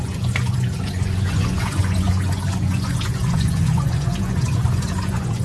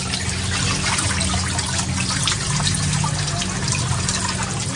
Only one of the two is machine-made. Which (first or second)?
first